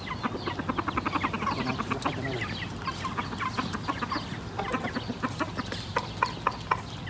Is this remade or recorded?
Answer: recorded